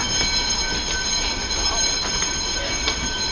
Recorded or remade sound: recorded